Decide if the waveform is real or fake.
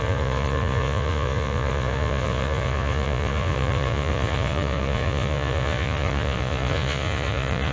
fake